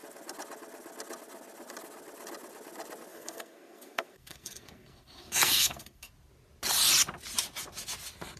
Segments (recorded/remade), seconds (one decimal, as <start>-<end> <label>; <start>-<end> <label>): 0.0-3.1 recorded; 3.1-6.1 remade; 6.1-8.4 recorded